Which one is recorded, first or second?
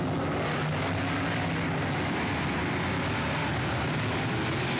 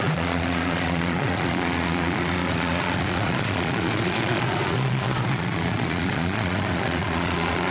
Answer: first